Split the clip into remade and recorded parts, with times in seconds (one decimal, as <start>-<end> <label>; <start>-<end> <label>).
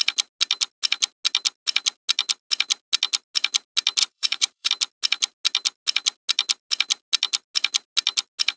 0.0-4.0 recorded; 4.0-4.7 remade; 4.7-8.6 recorded